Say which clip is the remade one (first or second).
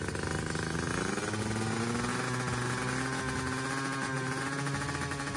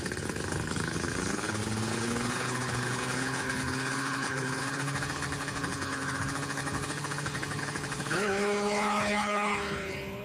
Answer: second